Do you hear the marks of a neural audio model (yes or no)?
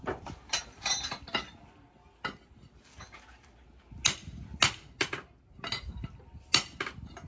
no